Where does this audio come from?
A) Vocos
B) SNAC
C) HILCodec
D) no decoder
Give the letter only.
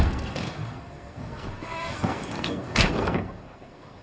B